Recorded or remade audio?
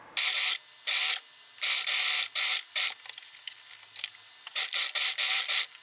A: recorded